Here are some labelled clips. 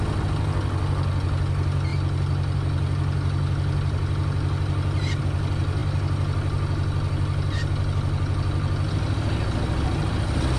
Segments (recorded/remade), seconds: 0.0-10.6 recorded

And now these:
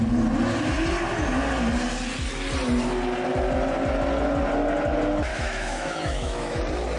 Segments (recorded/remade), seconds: 0.0-5.3 recorded; 5.3-6.6 remade; 6.6-7.0 recorded